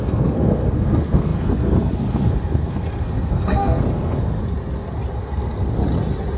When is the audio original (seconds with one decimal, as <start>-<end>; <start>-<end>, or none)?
4.4-5.2; 5.8-6.4